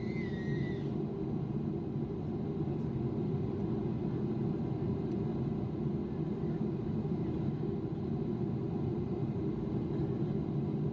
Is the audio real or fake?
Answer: real